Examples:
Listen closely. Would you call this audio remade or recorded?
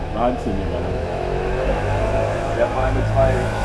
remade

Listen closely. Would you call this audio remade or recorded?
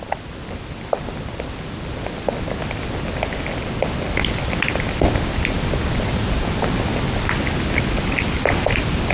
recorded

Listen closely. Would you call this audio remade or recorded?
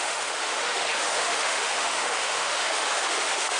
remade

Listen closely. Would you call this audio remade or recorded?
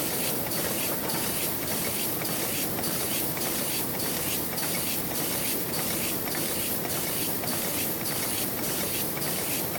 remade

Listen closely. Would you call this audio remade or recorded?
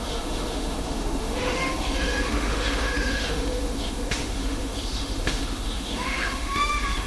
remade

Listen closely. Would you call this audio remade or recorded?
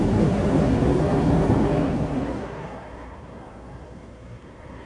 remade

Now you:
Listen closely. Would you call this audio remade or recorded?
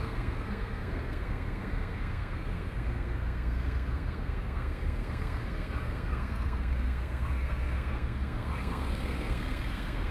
remade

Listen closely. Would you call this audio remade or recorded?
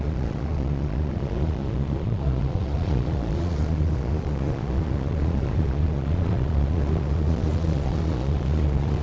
remade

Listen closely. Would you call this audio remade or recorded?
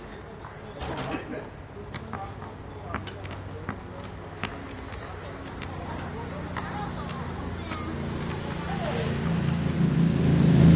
recorded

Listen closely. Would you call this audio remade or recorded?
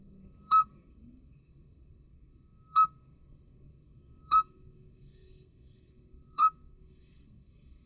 remade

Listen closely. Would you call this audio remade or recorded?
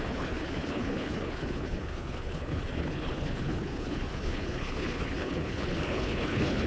remade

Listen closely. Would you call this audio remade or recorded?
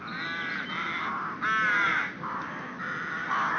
recorded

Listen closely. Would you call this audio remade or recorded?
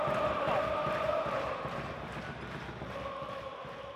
recorded